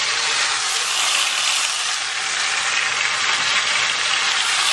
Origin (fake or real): real